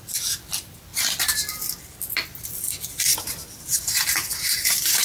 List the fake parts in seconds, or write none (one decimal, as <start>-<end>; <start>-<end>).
none